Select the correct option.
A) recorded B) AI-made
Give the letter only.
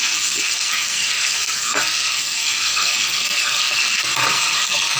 B